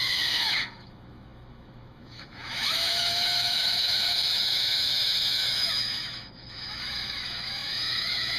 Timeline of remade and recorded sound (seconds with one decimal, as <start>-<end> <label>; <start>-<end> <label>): 0.0-8.4 remade